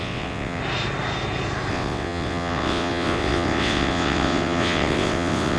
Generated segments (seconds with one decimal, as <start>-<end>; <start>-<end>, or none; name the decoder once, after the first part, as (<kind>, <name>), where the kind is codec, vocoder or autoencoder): 0.0-0.6 (vocoder, WaveNeXt); 1.7-5.6